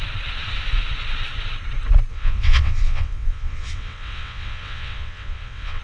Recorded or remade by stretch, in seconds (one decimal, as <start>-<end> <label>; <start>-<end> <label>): 0.0-2.1 recorded; 2.1-5.8 remade